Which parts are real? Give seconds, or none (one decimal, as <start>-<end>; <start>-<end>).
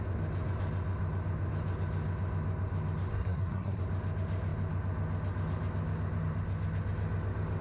0.0-3.1; 3.8-7.6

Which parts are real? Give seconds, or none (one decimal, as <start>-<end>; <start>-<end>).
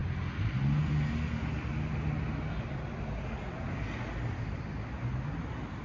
0.0-5.8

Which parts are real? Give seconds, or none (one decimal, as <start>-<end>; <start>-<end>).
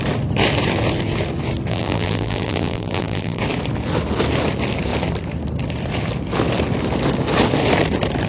0.0-1.7; 3.4-8.3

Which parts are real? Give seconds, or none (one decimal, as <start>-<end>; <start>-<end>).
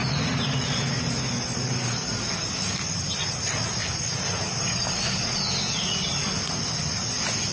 0.0-7.5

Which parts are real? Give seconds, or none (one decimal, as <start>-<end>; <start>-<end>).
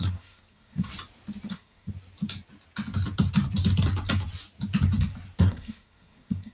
0.9-1.5; 1.9-5.4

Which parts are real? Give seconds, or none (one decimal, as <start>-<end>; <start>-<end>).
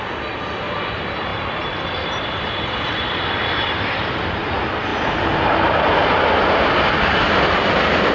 4.9-8.1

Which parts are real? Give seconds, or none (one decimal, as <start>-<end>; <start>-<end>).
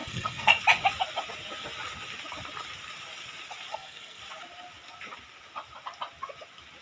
0.5-3.7; 4.2-6.8